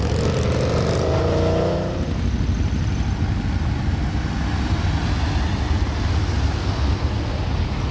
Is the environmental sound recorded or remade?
recorded